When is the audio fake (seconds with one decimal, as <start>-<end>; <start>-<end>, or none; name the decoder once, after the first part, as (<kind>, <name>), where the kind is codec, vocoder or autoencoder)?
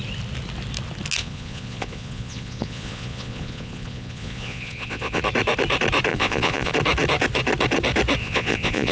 1.2-5.2 (vocoder, Vocos); 6.1-6.7; 8.2-8.9